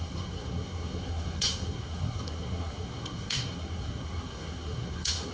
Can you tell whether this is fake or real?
fake